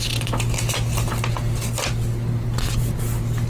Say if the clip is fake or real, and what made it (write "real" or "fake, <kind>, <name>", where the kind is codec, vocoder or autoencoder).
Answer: real